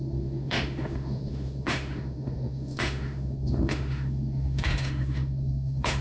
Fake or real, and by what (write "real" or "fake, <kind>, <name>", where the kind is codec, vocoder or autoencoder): fake, autoencoder, DAC-VAE